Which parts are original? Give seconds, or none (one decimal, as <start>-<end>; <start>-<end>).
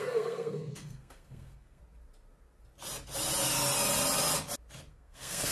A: 1.8-4.9